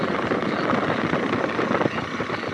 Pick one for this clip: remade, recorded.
recorded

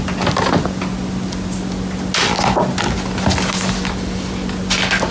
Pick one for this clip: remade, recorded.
recorded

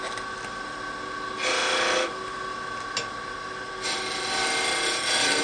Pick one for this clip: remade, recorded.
recorded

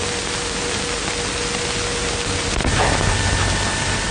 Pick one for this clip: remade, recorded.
recorded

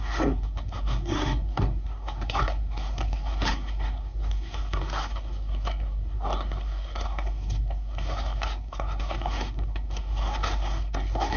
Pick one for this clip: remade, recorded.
remade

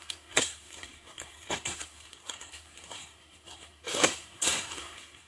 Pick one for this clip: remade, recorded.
remade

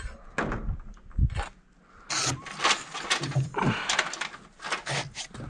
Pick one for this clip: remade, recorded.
recorded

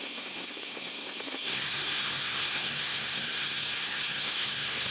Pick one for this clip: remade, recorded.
remade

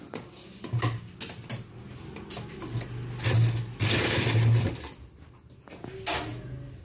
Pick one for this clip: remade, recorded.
recorded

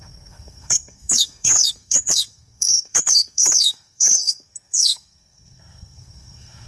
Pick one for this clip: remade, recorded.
remade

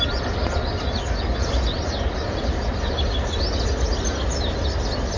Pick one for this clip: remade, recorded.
recorded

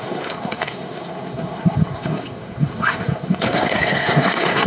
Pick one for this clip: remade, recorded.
remade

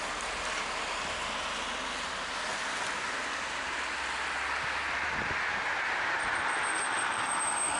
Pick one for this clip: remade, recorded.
recorded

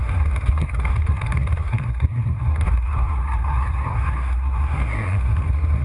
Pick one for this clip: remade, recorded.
remade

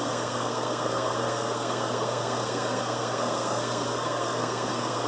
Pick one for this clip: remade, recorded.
remade